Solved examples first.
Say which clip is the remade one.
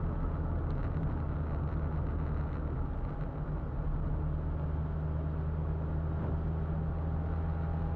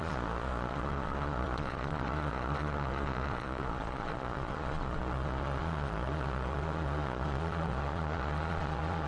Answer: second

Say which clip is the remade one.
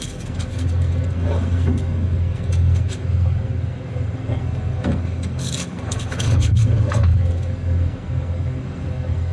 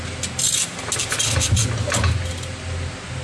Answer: first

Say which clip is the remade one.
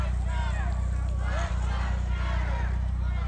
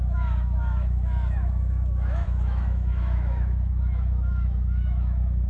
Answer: second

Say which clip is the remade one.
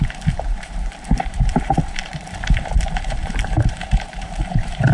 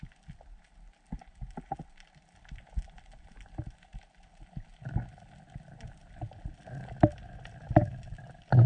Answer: first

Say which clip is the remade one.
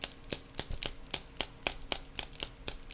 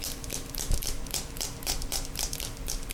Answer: second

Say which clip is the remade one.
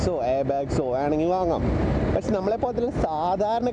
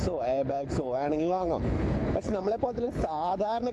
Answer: second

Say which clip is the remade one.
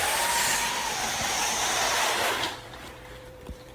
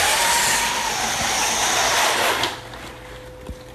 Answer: first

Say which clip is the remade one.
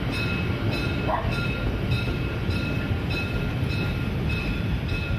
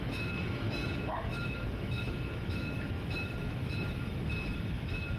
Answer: second